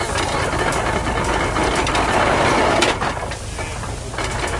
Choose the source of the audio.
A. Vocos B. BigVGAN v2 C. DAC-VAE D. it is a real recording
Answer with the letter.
D